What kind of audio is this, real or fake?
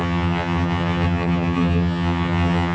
fake